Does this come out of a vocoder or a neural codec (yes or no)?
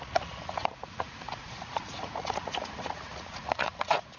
yes